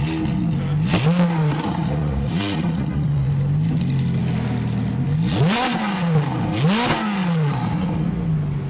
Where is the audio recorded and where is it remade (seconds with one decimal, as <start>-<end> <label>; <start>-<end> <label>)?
0.0-1.4 recorded; 1.4-3.3 remade; 3.3-8.7 recorded